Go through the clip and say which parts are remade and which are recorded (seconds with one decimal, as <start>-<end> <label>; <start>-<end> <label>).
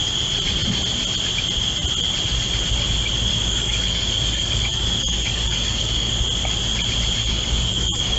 0.0-3.3 recorded; 3.3-6.1 remade; 6.1-7.2 recorded; 7.2-8.2 remade